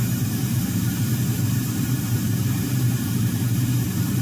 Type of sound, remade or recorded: remade